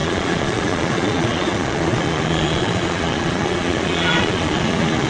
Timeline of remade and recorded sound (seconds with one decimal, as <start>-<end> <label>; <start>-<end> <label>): 0.0-5.1 remade